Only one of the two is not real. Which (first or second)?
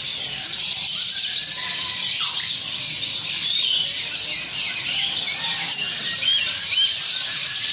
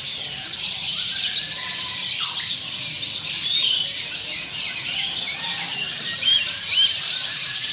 second